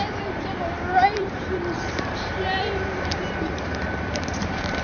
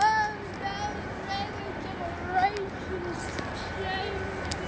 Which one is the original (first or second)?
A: second